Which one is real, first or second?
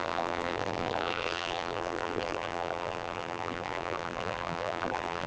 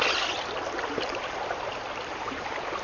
second